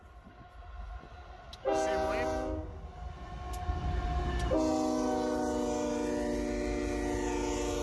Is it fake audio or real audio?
real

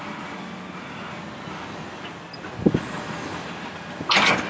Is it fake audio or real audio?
real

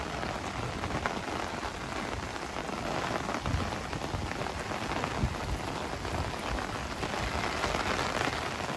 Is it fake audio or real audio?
real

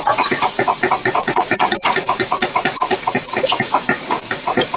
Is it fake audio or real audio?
fake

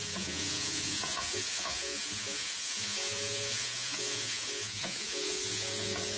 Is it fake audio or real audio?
fake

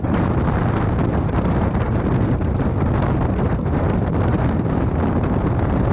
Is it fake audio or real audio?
real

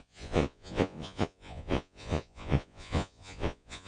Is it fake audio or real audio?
fake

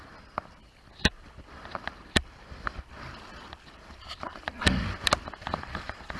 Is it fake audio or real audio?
real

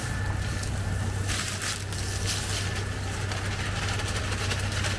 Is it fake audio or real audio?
real